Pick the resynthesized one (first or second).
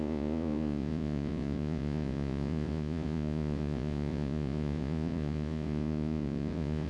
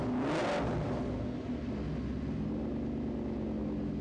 first